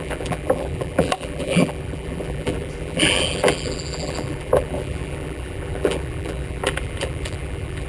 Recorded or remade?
remade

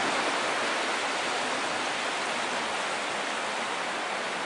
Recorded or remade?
recorded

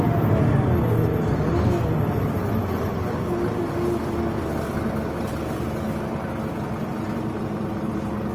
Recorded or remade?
recorded